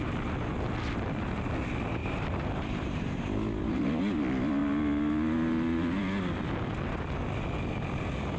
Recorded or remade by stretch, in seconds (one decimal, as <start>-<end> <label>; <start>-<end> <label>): 0.0-2.0 recorded; 2.0-4.0 remade; 4.0-8.4 recorded